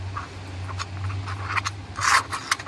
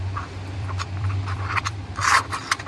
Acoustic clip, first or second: first